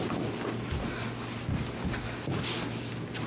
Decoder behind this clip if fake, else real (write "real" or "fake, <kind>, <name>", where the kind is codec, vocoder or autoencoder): real